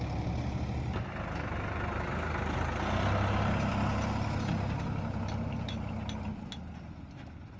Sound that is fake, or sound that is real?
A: real